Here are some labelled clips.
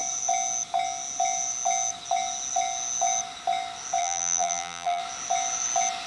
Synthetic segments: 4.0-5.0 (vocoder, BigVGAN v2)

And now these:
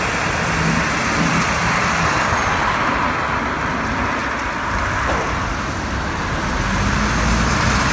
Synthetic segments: none

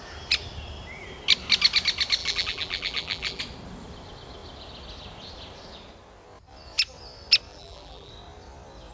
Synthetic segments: 2.2-3.4 (vocoder, BigVGAN v2); 7.5-8.1

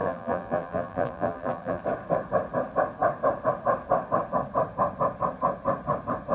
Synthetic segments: 0.0-1.8 (vocoder, BigVGAN v2)

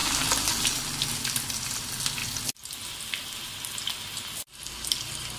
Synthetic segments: none

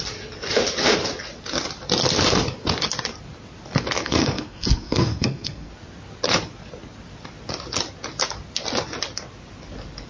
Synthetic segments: 4.0-5.7 (codec, SNAC)

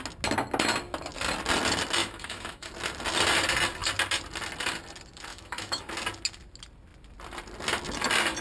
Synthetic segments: 2.0-2.7 (autoencoder, DAC-VAE); 5.3-5.9

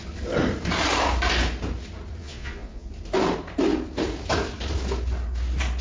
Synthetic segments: 2.2-2.9 (vocoder, Vocos)